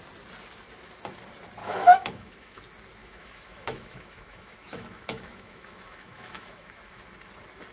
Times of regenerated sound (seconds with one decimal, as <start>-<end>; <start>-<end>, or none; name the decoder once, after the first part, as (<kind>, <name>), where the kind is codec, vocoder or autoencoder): 1.6-2.6 (autoencoder, DAC-VAE); 3.0-7.1